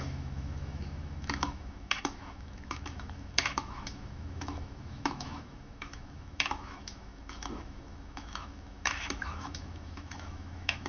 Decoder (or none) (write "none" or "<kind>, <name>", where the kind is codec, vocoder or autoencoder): autoencoder, DAC-VAE